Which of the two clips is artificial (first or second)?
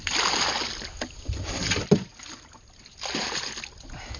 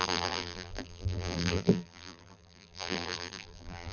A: second